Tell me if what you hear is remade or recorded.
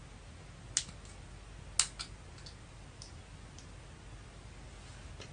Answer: recorded